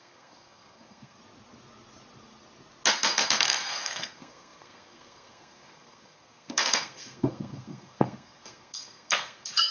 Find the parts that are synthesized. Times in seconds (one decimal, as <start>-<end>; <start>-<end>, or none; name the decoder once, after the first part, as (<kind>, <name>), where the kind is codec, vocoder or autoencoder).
0.0-1.2 (codec, SNAC); 2.9-9.7